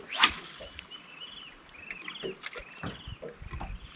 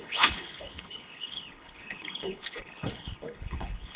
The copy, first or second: second